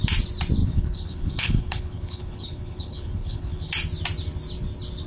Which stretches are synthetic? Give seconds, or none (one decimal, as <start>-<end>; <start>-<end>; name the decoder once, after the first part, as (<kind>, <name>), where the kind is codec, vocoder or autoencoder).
0.6-3.7 (codec, HILCodec)